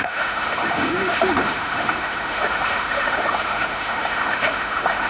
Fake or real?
fake